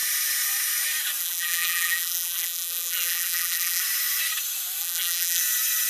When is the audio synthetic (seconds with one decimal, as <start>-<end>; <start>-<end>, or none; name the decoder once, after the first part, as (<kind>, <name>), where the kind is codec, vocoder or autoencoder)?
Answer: 1.2-3.8 (vocoder, BigVGAN v2); 4.8-5.4